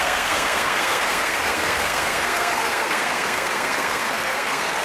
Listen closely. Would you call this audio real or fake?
fake